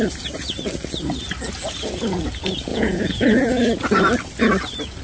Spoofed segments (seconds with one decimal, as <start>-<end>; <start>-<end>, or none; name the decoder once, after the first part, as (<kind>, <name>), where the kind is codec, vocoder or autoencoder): 2.7-3.6 (vocoder, Vocos)